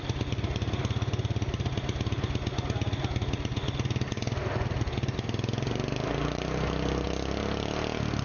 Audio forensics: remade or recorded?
recorded